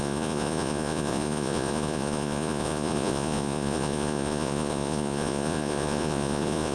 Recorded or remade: remade